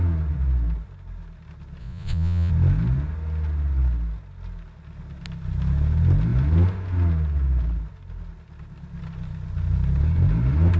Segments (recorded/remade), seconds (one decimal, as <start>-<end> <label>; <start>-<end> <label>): 0.0-1.8 recorded; 1.8-2.5 remade; 2.5-10.8 recorded